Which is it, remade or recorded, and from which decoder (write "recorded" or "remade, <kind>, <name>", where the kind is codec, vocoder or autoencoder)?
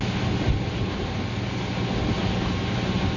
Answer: recorded